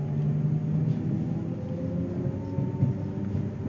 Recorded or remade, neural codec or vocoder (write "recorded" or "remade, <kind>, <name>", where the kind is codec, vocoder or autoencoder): recorded